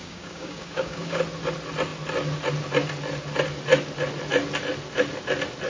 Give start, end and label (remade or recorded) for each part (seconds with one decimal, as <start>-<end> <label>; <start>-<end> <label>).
0.0-1.2 remade; 1.2-5.7 recorded